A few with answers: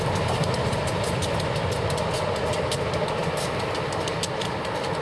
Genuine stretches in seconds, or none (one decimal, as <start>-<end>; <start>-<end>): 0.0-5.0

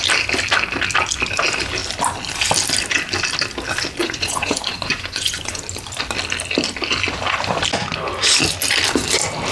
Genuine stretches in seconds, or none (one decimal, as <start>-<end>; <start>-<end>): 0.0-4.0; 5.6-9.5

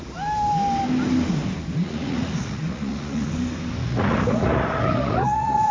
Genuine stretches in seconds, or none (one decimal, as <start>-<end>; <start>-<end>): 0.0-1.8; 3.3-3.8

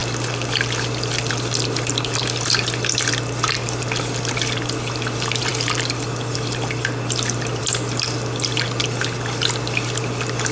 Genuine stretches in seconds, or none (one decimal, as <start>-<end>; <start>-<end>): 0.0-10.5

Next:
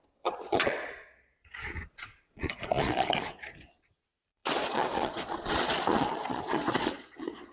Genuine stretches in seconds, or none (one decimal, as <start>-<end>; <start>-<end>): none

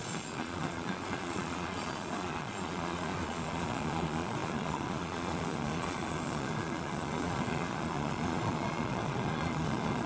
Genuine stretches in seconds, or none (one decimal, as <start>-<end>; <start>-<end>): none